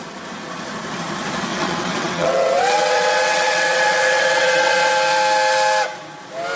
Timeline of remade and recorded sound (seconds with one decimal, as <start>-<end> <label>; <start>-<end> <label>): 0.0-1.5 recorded; 1.5-4.9 remade; 4.9-6.6 recorded